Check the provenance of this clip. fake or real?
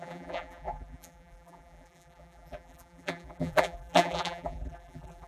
fake